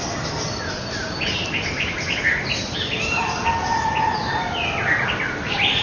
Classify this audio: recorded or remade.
recorded